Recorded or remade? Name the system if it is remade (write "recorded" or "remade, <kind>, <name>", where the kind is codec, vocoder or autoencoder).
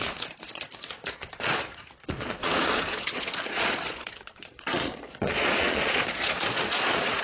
remade, vocoder, Vocos